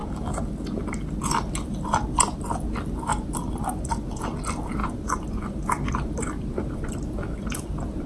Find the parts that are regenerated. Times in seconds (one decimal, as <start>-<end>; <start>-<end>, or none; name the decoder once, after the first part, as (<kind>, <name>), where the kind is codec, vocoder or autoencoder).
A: none